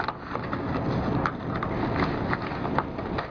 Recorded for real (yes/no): yes